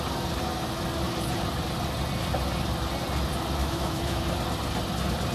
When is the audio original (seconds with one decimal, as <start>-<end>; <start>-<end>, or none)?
0.0-3.6; 4.2-5.3